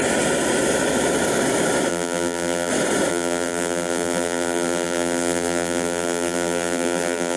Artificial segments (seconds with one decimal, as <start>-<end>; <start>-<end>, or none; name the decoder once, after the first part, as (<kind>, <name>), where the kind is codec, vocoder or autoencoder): 1.9-2.7 (vocoder, BigVGAN v2); 3.1-7.4